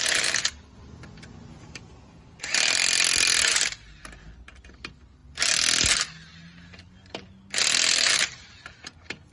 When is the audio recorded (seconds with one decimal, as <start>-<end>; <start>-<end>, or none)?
0.0-9.3